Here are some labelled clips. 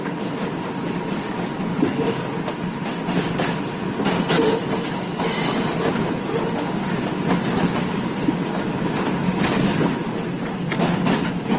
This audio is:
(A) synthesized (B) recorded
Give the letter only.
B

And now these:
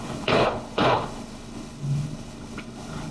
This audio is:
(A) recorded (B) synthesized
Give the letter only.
B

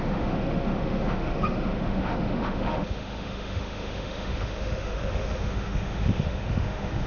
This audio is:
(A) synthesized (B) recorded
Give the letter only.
A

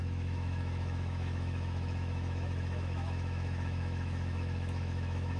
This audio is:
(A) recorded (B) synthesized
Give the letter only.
B